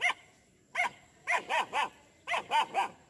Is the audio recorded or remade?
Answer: remade